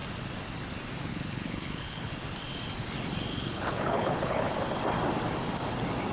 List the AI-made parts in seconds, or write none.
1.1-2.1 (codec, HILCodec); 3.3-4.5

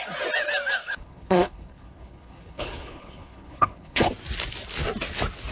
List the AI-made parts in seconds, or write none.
0.8-4.1 (codec, HILCodec)

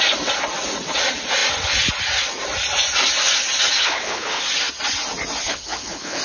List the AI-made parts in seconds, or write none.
3.8-4.4 (codec, HILCodec); 5.4-6.2

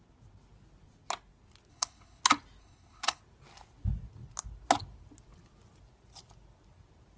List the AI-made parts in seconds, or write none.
1.7-2.2 (codec, HILCodec); 2.6-3.2

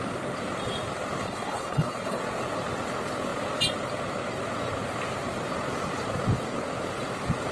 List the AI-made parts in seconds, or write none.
1.2-2.2 (codec, HILCodec)

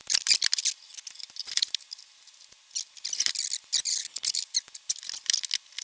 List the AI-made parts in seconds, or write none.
3.9-4.4 (codec, HILCodec)